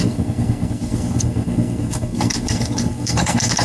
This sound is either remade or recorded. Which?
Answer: remade